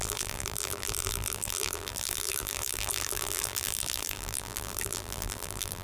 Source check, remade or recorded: remade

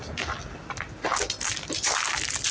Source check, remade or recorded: recorded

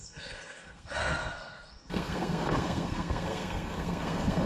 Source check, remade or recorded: remade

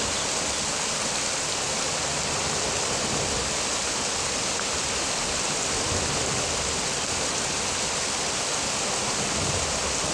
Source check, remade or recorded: recorded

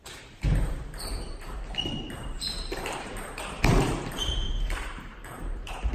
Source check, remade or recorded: remade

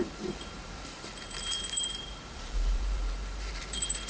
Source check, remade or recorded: remade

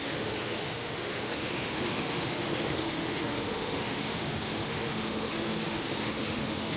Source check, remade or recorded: remade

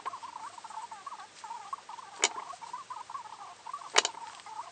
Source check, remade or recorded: recorded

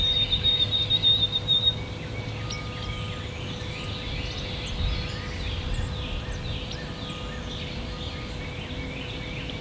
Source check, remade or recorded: recorded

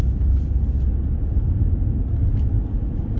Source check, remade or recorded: recorded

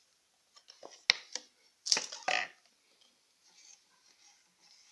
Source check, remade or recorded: recorded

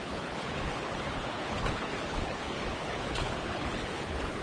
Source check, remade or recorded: remade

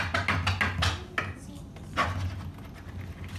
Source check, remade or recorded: recorded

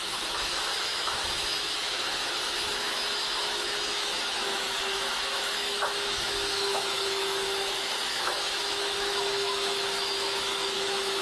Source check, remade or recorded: remade